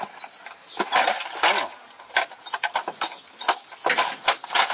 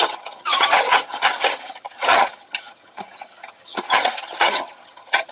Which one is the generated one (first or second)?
second